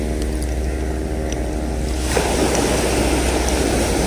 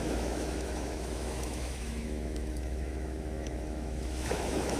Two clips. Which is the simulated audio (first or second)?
second